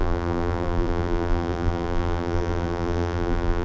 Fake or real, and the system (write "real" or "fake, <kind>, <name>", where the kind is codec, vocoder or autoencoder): fake, vocoder, BigVGAN v2